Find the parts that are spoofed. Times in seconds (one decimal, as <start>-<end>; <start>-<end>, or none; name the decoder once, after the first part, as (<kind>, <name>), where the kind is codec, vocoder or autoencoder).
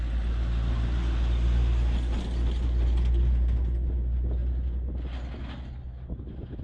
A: none